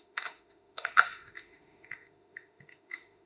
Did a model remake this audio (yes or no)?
yes